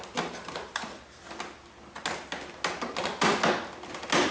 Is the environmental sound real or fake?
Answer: real